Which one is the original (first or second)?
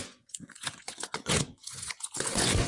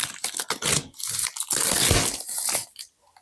second